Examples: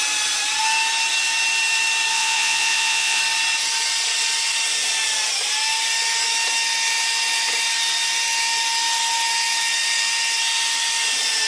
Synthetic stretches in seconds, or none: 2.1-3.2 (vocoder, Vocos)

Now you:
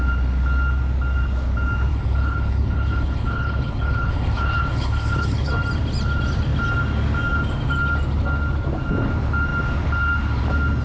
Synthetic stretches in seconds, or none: 1.9-5.5 (codec, HILCodec)